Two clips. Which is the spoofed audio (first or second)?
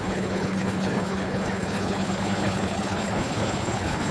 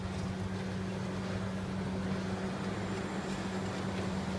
first